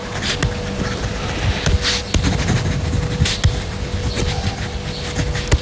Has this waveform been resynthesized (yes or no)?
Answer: no